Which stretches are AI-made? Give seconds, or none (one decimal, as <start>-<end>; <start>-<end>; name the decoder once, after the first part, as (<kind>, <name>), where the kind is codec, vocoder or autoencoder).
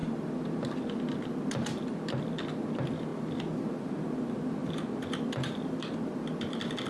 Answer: none